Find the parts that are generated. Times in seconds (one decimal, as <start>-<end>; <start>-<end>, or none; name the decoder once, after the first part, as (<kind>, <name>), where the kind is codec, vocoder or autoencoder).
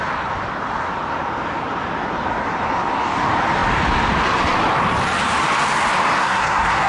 6.2-6.9 (codec, SNAC)